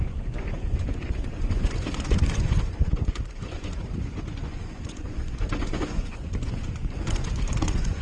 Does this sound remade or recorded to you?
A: remade